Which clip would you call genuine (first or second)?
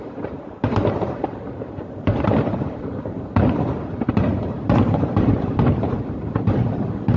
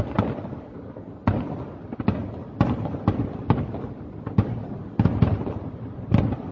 second